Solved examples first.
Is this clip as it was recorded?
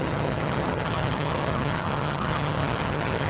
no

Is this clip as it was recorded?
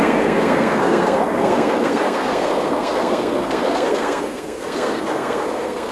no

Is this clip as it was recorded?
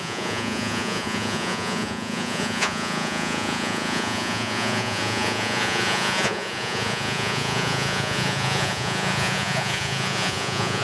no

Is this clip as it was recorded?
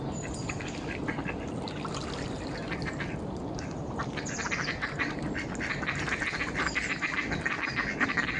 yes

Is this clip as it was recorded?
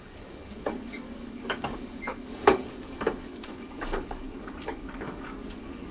no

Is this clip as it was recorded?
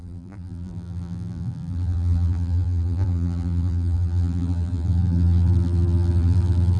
no